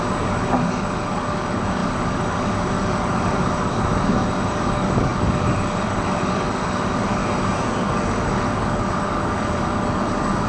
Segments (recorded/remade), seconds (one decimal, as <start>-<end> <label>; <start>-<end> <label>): 0.0-7.2 remade; 7.2-7.8 recorded; 7.8-10.5 remade